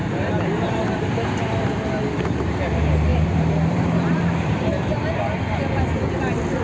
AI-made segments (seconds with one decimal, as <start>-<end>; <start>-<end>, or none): 0.0-0.8; 3.1-5.0